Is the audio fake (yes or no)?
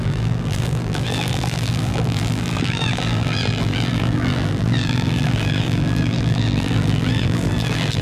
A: yes